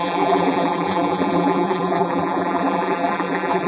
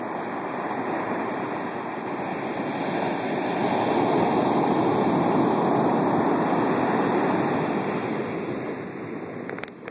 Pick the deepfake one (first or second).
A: first